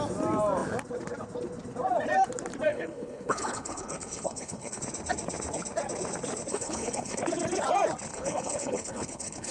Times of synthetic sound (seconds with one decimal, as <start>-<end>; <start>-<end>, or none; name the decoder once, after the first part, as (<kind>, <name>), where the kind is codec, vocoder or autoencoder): 2.7-4.8 (codec, HILCodec); 6.5-7.2; 8.1-9.5